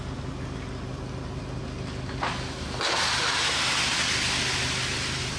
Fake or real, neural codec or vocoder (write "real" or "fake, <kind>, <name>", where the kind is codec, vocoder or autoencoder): real